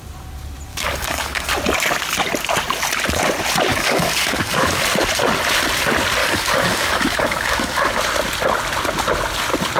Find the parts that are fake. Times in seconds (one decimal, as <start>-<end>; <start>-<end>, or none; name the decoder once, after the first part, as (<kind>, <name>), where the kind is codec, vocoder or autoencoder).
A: 0.7-1.5 (codec, DAC); 3.7-4.8; 6.2-8.0